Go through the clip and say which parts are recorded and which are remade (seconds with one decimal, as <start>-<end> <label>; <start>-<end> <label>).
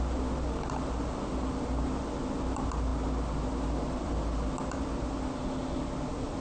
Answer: 0.0-6.4 recorded